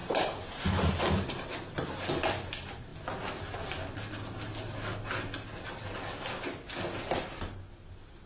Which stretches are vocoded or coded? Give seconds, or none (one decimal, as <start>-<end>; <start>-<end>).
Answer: 0.0-0.6